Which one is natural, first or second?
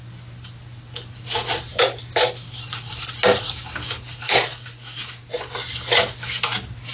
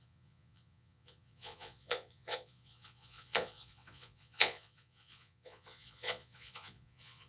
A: first